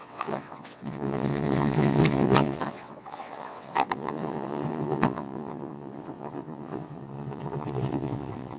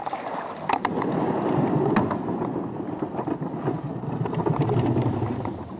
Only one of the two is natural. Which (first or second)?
second